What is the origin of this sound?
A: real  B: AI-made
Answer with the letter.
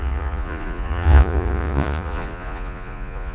B